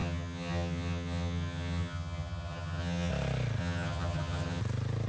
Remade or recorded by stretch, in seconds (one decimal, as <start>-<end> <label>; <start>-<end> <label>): 0.0-3.1 remade; 3.1-3.6 recorded; 3.6-4.6 remade; 4.6-5.1 recorded